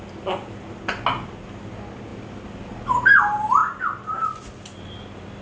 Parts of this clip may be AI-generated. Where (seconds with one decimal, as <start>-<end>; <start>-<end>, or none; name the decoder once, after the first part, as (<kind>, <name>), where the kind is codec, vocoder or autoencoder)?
none